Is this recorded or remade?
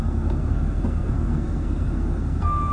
remade